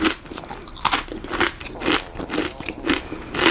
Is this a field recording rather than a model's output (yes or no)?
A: yes